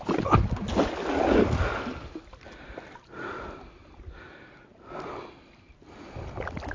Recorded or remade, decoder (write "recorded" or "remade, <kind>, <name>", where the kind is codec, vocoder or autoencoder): recorded